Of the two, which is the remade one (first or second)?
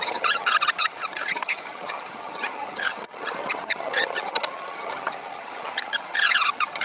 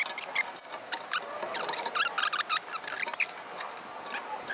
first